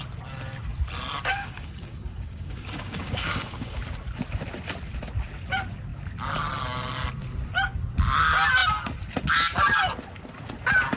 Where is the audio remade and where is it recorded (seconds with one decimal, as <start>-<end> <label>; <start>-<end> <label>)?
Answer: 0.0-1.3 recorded; 1.3-3.8 remade; 3.8-11.0 recorded